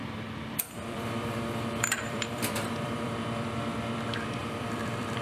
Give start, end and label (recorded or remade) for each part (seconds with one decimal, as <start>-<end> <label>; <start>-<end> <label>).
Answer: 0.0-3.1 remade; 3.1-4.4 recorded; 4.4-5.2 remade